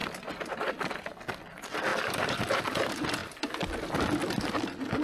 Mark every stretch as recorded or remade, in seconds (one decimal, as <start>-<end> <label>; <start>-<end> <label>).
0.0-1.9 recorded; 1.9-2.4 remade; 2.4-5.0 recorded